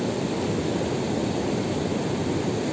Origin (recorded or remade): recorded